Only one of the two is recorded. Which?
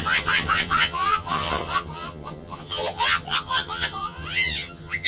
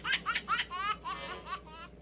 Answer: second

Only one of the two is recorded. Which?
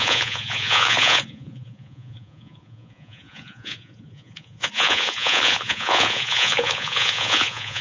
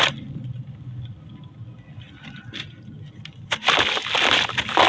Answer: second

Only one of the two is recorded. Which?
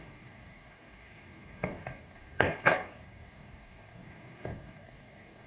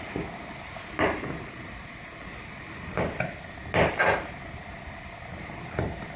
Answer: second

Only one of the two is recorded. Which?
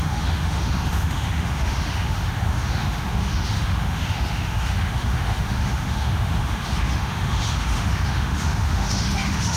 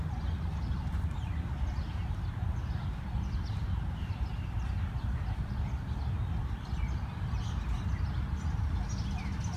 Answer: second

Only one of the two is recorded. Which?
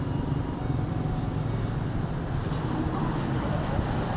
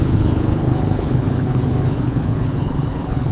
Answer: first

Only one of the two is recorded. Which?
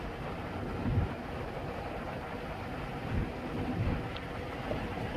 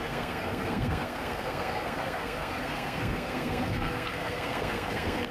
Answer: first